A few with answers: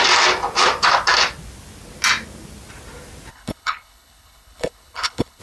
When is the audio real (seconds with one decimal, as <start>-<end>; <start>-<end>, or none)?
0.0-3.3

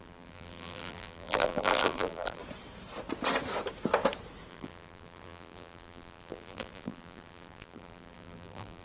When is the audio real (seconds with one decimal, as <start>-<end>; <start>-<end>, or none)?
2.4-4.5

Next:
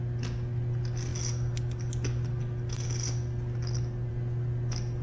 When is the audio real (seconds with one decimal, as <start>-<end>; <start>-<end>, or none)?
0.0-5.0